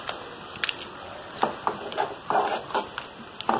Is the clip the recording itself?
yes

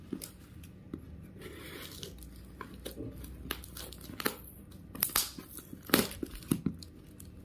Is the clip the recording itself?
yes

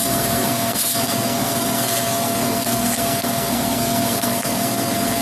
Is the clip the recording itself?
no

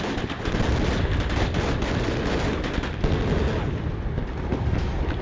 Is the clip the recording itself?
yes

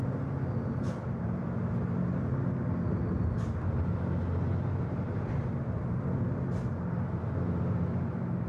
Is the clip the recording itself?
yes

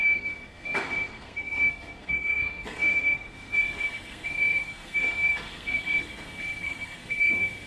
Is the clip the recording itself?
no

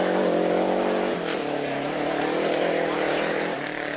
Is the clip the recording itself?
yes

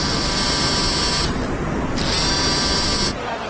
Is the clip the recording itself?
yes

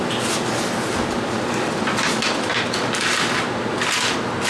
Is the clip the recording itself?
yes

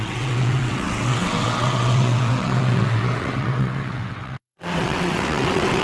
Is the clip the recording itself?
no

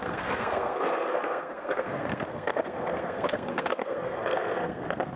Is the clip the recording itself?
no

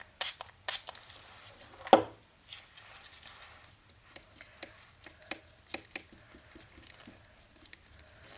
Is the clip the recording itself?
yes